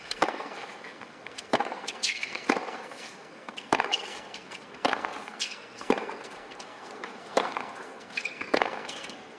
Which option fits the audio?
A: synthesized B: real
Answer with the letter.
A